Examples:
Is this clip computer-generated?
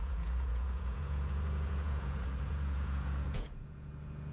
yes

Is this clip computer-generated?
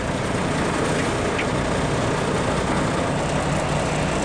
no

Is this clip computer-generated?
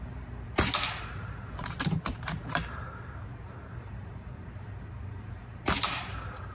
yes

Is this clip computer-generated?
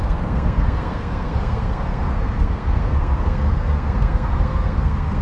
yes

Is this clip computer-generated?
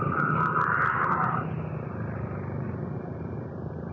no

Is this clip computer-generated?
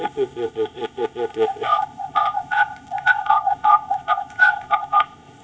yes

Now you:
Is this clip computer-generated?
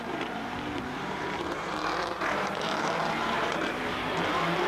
yes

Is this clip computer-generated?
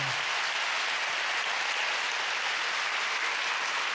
no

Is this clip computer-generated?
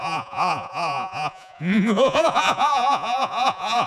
yes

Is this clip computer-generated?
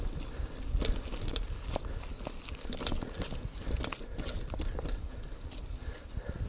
no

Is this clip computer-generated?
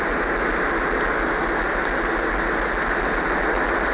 no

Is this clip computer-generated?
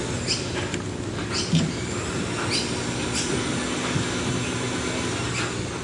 no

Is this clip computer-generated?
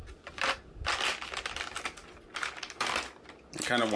no